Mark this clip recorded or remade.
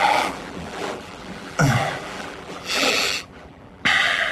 remade